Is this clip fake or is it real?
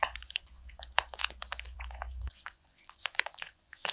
fake